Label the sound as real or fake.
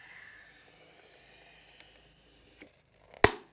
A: real